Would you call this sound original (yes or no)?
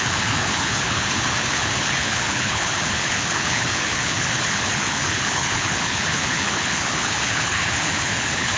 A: no